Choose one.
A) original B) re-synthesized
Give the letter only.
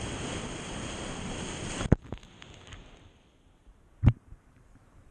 B